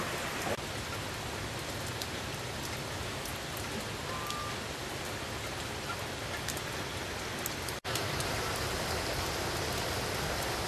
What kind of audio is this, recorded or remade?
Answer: recorded